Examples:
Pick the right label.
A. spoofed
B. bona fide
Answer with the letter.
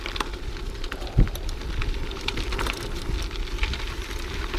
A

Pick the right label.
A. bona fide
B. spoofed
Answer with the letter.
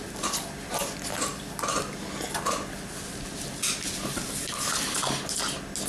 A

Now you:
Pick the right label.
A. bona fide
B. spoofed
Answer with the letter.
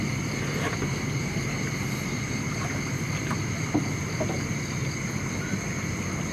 A